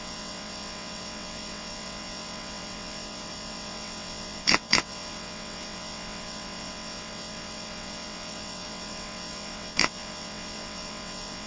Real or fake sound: fake